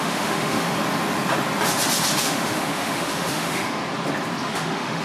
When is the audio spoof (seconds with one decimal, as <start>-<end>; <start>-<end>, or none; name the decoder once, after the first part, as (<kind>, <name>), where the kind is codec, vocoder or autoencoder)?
0.0-0.7 (autoencoder, DAC-VAE); 2.2-3.8; 4.4-5.0